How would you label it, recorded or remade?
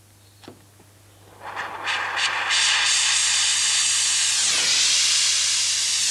recorded